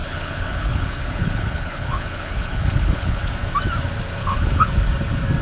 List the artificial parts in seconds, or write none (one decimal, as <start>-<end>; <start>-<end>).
0.0-3.2; 4.2-4.7